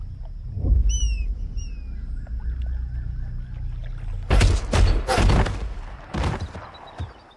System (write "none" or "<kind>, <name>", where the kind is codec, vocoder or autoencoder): none